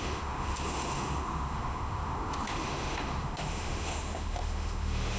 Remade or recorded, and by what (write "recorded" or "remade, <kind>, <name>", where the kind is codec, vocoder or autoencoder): remade, autoencoder, DAC-VAE